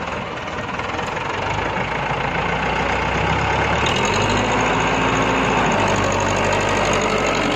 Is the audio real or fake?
real